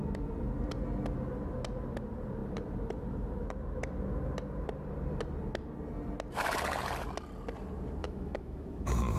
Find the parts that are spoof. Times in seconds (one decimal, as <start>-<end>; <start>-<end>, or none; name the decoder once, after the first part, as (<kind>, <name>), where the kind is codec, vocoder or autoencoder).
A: 8.0-9.2 (autoencoder, DAC-VAE)

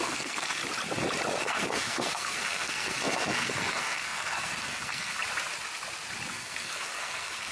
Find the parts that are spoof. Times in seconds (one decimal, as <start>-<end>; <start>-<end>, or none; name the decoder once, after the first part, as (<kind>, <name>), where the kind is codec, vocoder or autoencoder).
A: 0.0-0.6 (codec, SNAC); 1.4-5.2; 6.3-7.5

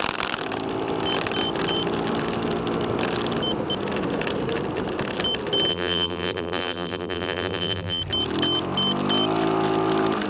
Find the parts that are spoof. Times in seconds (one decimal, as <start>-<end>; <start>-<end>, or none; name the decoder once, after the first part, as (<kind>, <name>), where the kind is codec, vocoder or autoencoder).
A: 5.7-8.0 (vocoder, BigVGAN v2)